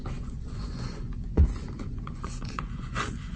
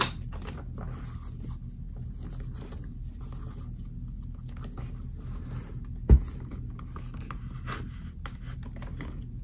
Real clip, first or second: second